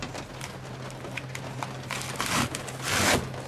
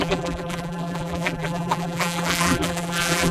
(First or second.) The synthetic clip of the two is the second